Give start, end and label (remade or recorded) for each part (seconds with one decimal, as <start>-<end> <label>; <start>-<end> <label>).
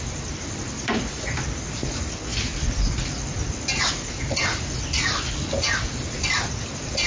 0.0-7.1 recorded